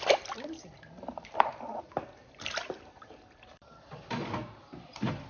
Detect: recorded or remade remade